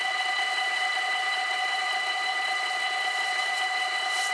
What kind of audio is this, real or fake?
fake